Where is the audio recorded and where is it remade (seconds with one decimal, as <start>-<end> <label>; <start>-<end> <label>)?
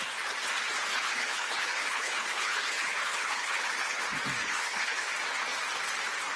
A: 0.0-0.9 recorded; 0.9-4.0 remade; 4.0-4.4 recorded; 4.4-5.1 remade; 5.1-6.4 recorded